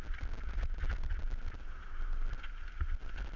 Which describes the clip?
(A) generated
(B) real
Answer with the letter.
B